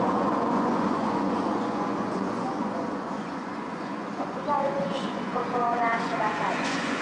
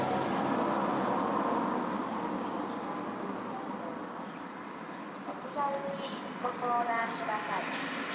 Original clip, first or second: second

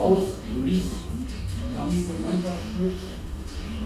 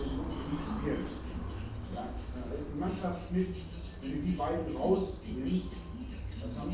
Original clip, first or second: second